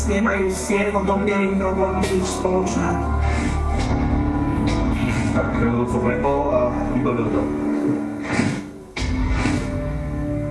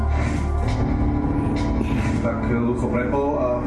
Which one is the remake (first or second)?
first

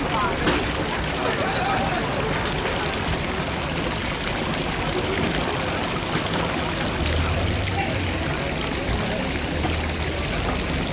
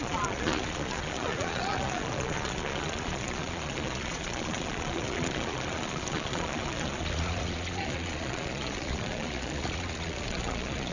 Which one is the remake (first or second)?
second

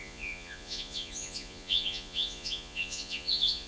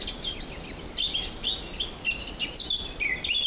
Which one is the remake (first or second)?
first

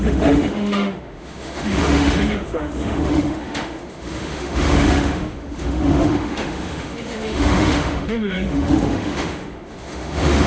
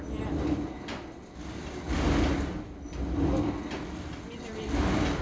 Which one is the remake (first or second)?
first